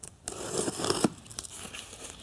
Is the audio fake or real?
real